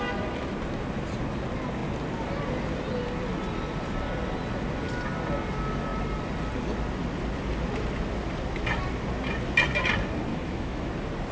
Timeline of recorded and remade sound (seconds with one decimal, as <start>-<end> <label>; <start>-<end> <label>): 0.0-10.3 recorded; 10.3-10.9 remade; 10.9-11.3 recorded